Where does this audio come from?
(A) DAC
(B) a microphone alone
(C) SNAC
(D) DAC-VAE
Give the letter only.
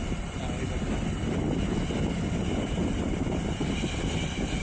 B